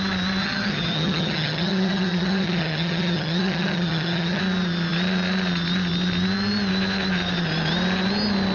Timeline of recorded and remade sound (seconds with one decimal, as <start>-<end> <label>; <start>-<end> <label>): 0.0-0.4 recorded; 0.4-4.4 remade; 4.4-8.5 recorded